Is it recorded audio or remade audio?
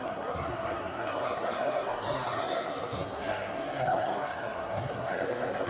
remade